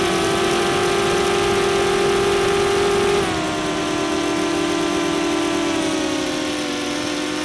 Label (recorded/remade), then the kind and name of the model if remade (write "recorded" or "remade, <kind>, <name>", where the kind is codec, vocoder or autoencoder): recorded